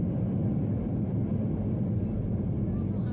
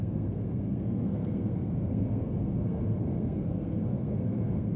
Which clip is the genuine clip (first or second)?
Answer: first